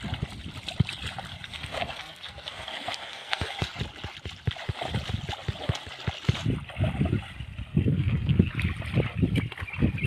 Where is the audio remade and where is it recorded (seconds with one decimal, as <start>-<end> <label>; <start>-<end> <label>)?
0.0-1.3 recorded; 1.3-3.8 remade; 3.8-7.7 recorded; 7.7-8.5 remade; 8.5-10.1 recorded

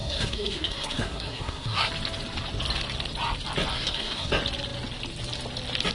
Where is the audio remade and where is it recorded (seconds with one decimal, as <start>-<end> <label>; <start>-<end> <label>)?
0.0-1.9 remade; 1.9-3.7 recorded; 3.7-4.3 remade; 4.3-5.9 recorded

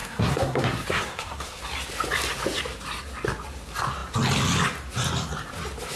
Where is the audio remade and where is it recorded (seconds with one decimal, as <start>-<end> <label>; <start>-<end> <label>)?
0.0-1.6 remade; 1.6-6.0 recorded

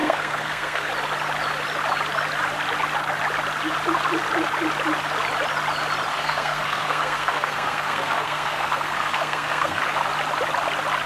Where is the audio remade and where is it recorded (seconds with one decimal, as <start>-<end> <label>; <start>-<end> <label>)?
0.0-0.9 remade; 0.9-6.1 recorded; 6.1-9.8 remade; 9.8-11.1 recorded

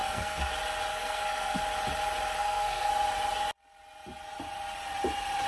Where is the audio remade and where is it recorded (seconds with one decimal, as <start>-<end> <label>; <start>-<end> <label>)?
0.0-0.5 remade; 0.5-0.9 recorded; 0.9-1.6 remade; 1.6-2.4 recorded; 2.4-2.9 remade; 2.9-5.5 recorded

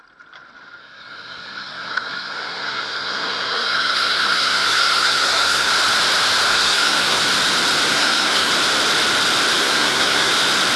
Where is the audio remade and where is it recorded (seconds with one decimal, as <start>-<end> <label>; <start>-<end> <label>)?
0.0-0.8 recorded; 0.8-5.7 remade; 5.7-6.5 recorded; 6.5-7.2 remade; 7.2-7.9 recorded; 7.9-8.5 remade; 8.5-9.6 recorded; 9.6-10.3 remade; 10.3-10.8 recorded

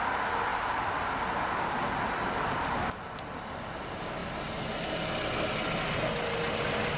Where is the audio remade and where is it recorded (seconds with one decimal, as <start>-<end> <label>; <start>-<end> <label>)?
0.0-7.0 recorded